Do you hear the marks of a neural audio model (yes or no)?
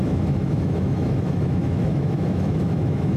yes